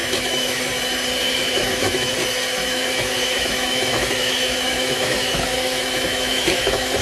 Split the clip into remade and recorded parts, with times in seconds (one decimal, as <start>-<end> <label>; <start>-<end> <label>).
0.0-0.7 remade; 0.7-1.4 recorded; 1.4-2.1 remade; 2.1-2.6 recorded; 2.6-7.0 remade